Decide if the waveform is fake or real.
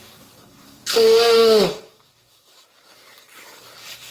fake